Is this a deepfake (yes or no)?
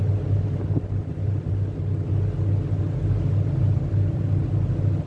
no